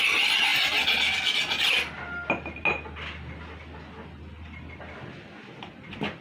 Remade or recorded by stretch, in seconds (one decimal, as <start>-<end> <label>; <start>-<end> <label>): 0.0-6.2 recorded

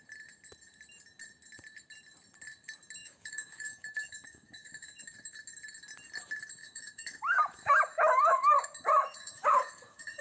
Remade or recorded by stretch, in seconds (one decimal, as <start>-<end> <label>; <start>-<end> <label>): 0.0-3.0 recorded; 3.0-5.0 remade; 5.0-6.6 recorded; 6.6-10.2 remade

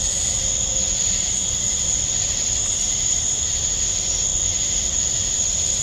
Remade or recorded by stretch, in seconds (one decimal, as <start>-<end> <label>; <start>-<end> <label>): 0.0-5.8 recorded

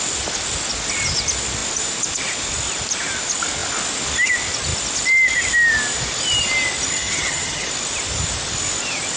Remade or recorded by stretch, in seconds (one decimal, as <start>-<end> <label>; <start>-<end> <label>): 0.0-6.9 recorded; 6.9-7.7 remade; 7.7-9.2 recorded

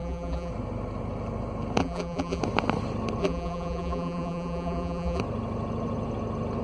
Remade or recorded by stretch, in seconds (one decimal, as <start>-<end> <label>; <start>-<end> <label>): 0.0-0.5 remade; 0.5-1.8 recorded; 1.8-2.4 remade; 2.4-3.2 recorded; 3.2-5.2 remade; 5.2-6.6 recorded

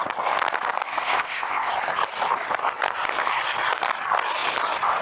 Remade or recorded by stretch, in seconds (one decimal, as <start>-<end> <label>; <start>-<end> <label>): 0.0-1.0 recorded; 1.0-1.7 remade; 1.7-5.0 recorded

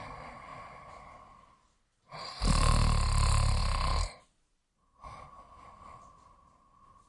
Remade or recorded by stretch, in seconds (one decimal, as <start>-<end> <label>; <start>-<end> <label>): 0.0-7.1 recorded

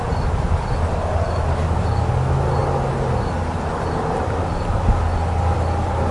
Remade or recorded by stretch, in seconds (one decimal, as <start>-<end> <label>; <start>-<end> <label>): 0.0-6.1 recorded